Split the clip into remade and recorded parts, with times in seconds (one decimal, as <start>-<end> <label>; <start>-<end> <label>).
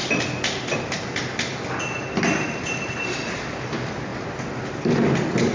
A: 0.0-5.5 recorded